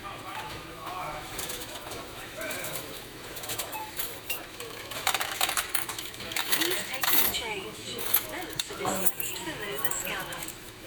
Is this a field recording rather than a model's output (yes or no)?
no